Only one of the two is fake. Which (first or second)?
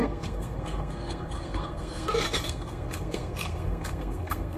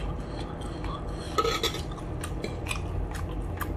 first